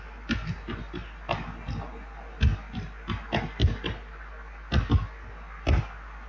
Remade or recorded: recorded